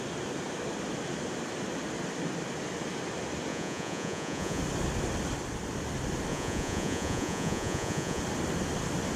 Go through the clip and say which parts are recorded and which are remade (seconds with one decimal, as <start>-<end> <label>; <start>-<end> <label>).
0.0-3.5 recorded; 3.5-4.6 remade; 4.6-6.3 recorded; 6.3-8.2 remade; 8.2-9.2 recorded